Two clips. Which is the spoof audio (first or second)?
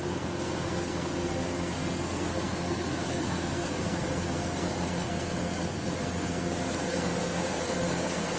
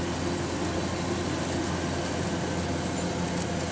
first